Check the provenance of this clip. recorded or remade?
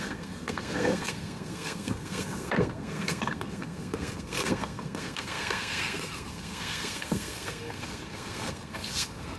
remade